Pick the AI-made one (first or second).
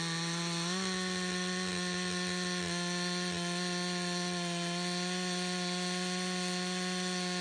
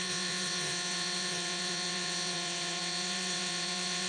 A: second